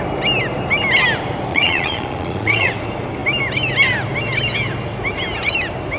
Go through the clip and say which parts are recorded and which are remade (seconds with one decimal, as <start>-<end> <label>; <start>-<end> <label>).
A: 0.0-1.5 recorded; 1.5-2.7 remade; 2.7-6.0 recorded